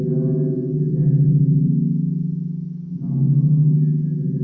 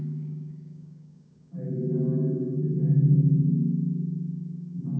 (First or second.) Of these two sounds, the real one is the first